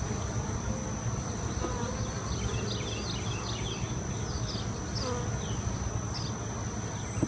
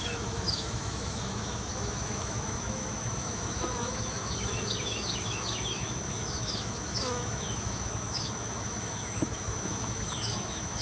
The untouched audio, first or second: first